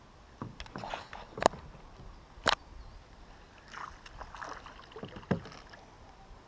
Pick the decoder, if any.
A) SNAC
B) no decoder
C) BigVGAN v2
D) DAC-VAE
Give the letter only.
B